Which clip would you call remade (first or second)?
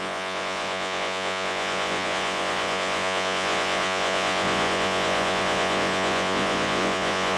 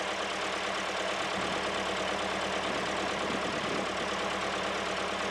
first